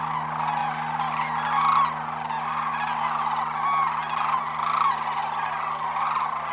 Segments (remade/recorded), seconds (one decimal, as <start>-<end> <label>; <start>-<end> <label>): 0.0-6.5 recorded